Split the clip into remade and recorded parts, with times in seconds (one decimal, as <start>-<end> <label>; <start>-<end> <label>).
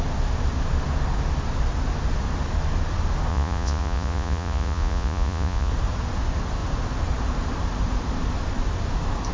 0.0-3.3 recorded; 3.3-5.7 remade; 5.7-9.3 recorded